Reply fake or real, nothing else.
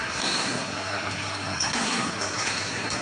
fake